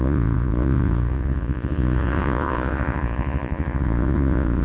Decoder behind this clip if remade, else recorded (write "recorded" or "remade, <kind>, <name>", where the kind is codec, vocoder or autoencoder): remade, vocoder, Vocos